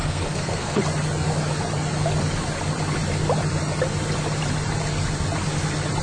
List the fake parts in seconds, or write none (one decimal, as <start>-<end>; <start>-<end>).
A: 0.0-0.8